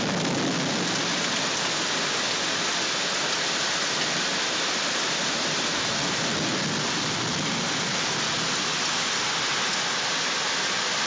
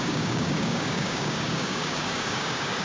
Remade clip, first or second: second